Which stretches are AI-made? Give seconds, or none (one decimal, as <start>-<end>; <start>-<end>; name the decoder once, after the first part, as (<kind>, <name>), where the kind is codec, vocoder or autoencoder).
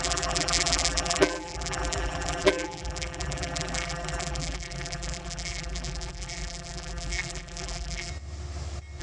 0.0-8.1 (vocoder, BigVGAN v2)